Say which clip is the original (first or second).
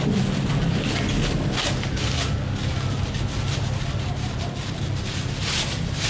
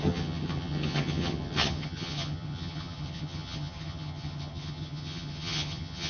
first